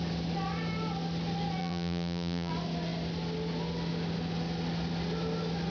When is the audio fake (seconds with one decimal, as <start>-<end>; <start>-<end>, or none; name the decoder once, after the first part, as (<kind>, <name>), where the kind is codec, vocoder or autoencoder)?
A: 1.6-2.5 (vocoder, BigVGAN v2)